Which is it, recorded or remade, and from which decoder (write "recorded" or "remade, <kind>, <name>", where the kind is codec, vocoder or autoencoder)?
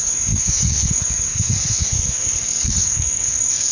remade, codec, SNAC